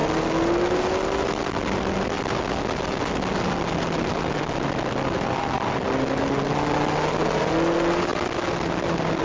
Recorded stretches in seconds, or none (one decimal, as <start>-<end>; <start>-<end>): 0.0-9.2